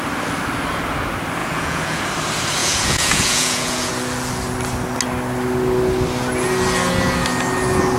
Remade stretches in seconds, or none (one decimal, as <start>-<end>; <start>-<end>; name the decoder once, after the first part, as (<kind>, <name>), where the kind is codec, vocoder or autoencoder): 1.4-2.0 (vocoder, Vocos); 2.6-3.9